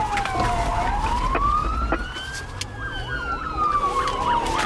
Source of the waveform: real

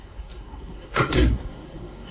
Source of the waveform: fake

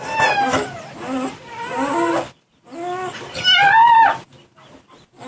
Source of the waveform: real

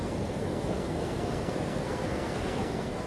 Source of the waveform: fake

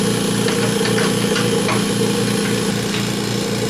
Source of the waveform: real